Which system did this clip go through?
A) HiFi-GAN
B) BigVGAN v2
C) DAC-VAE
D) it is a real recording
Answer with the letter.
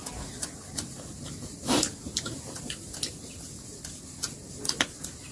D